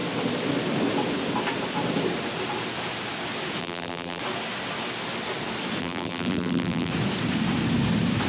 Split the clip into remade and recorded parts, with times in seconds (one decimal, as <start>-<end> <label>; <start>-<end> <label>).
0.0-3.6 recorded; 3.6-4.2 remade; 4.2-5.8 recorded; 5.8-6.9 remade; 6.9-8.3 recorded